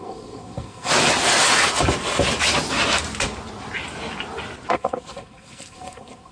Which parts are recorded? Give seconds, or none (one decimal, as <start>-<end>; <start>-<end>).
0.9-4.7